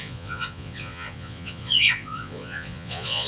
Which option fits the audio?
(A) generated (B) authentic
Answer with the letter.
A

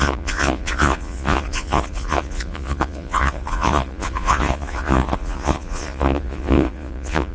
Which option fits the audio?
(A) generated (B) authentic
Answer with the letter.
A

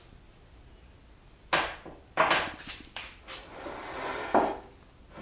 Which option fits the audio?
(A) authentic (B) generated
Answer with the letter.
A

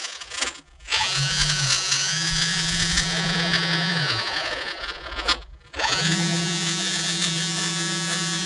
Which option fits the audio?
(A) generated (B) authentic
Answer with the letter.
A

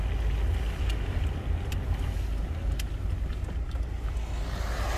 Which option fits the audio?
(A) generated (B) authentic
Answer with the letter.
B